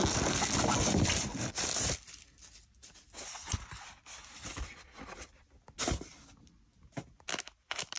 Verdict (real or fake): real